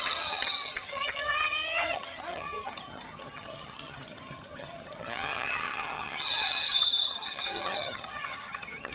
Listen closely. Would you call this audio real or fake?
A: fake